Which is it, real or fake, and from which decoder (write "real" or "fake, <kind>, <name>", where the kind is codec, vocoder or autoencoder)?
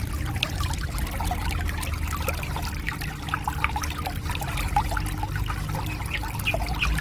real